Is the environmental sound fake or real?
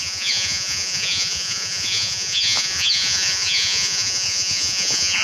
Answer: fake